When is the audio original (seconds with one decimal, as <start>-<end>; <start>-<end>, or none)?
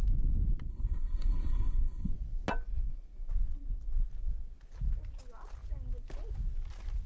0.0-0.7; 2.1-7.1